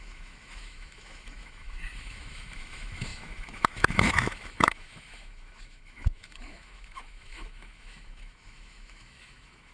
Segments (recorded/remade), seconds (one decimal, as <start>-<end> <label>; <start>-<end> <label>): 0.0-9.7 remade